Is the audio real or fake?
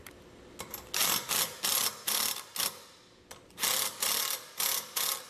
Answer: real